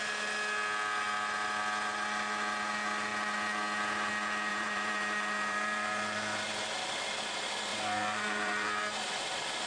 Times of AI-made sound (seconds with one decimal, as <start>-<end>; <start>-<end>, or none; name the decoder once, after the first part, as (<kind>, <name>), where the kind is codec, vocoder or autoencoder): 4.5-7.1 (vocoder, BigVGAN v2); 7.7-9.0